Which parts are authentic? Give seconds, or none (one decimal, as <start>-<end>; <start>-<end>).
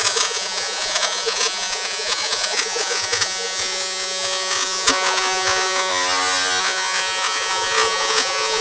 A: 5.9-6.6